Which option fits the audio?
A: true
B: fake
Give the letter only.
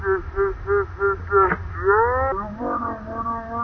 A